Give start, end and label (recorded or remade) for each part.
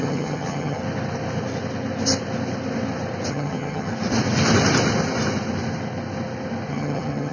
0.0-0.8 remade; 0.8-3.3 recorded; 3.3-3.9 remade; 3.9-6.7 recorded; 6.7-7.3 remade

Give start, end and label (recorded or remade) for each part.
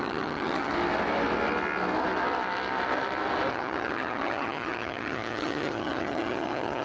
0.0-0.7 remade; 0.7-3.5 recorded; 3.5-6.8 remade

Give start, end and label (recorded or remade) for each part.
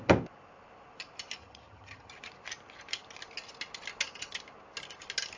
0.0-1.4 recorded; 1.4-2.1 remade; 2.1-5.4 recorded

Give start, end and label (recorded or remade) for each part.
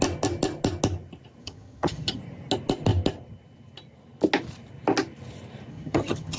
0.0-1.4 recorded; 1.4-2.2 remade; 2.2-5.7 recorded; 5.7-6.4 remade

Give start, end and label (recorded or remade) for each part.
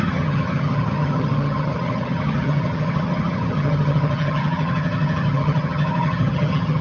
0.0-6.8 remade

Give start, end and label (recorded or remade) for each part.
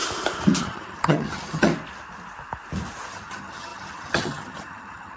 0.0-0.6 recorded; 0.6-1.7 remade; 1.7-3.1 recorded; 3.1-5.2 remade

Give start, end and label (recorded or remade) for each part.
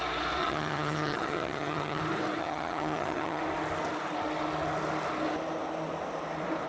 0.0-0.4 recorded; 0.4-2.0 remade; 2.0-2.4 recorded; 2.4-3.4 remade; 3.4-6.7 recorded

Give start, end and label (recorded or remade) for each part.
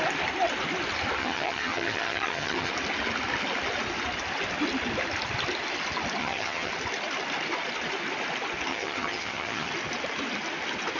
0.0-1.2 recorded; 1.2-2.7 remade; 2.7-6.2 recorded; 6.2-6.7 remade; 6.7-8.7 recorded; 8.7-9.7 remade; 9.7-11.0 recorded